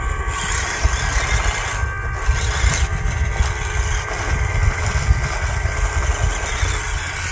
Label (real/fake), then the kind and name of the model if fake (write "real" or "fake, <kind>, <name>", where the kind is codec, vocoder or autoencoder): real